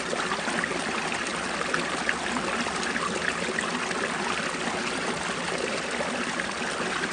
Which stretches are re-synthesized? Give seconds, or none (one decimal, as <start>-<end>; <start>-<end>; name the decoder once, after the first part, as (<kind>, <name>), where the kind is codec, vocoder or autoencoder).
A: none